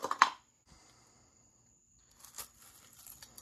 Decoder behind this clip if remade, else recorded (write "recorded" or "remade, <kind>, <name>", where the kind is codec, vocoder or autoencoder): recorded